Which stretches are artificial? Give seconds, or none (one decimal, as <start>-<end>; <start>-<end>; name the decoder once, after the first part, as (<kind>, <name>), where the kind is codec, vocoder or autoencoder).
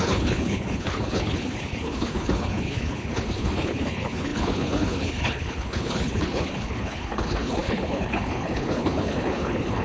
0.0-9.8 (codec, HILCodec)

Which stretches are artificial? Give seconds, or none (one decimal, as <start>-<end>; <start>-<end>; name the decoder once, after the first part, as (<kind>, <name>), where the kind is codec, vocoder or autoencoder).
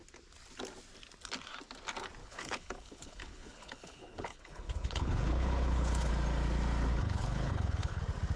2.2-6.1 (codec, HILCodec); 6.9-8.0